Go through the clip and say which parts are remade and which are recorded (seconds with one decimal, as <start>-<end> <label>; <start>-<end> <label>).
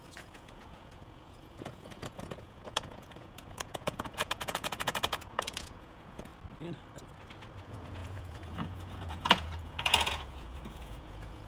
0.0-6.3 remade; 6.3-7.6 recorded; 7.6-11.5 remade